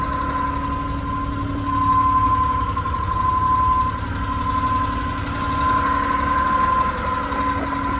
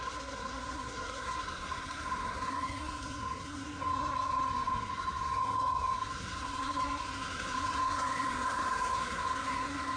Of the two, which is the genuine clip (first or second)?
first